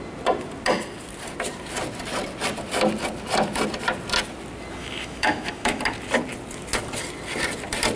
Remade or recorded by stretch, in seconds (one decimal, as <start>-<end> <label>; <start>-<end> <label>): 0.0-4.8 recorded; 4.8-5.8 remade; 5.8-8.0 recorded